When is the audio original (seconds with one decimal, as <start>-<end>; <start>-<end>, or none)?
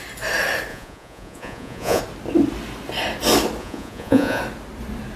0.0-0.7; 2.0-3.6; 4.4-5.2